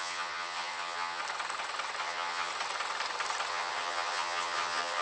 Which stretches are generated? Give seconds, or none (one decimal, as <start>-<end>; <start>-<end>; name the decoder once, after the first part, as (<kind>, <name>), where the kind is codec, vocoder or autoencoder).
0.0-1.2 (vocoder, HiFi-GAN); 2.0-2.5; 3.5-5.0